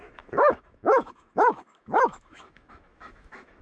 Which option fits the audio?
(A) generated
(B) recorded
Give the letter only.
A